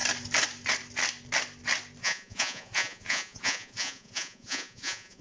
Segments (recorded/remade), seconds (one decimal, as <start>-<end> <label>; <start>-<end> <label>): 0.0-2.0 recorded; 2.0-5.2 remade